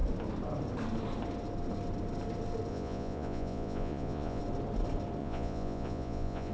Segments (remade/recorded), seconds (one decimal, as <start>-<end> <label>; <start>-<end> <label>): 0.0-2.7 recorded; 2.7-4.4 remade; 4.4-5.2 recorded; 5.2-6.5 remade